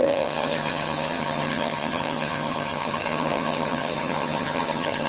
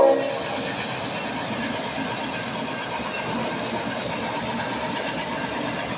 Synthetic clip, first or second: first